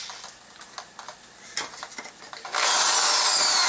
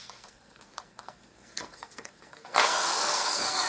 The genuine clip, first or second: first